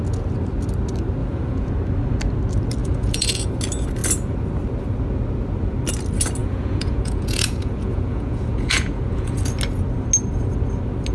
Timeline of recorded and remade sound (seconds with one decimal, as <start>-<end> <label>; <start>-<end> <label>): 0.0-1.2 recorded; 1.2-1.7 remade; 1.7-2.8 recorded; 2.8-3.5 remade; 3.5-6.4 recorded; 6.4-9.4 remade; 9.4-11.1 recorded